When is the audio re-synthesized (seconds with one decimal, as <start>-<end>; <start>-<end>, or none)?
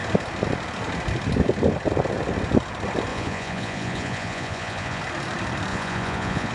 3.1-5.0; 5.7-6.5